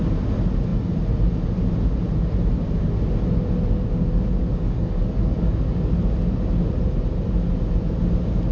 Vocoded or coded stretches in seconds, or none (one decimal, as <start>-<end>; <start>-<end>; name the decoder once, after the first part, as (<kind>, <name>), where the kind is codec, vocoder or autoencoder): 4.4-5.9 (codec, DAC)